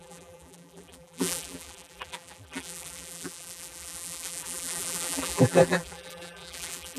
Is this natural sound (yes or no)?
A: no